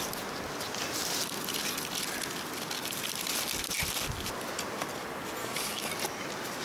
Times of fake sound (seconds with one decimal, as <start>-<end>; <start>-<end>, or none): 5.4-5.9